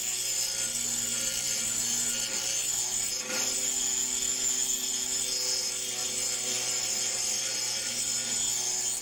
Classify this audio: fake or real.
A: real